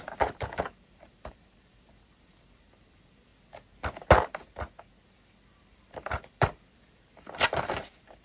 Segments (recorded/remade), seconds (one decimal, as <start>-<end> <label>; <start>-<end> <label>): 0.0-3.3 remade; 3.3-5.5 recorded; 5.5-8.2 remade